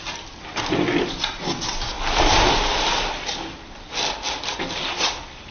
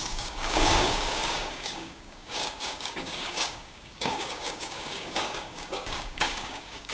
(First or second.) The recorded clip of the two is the first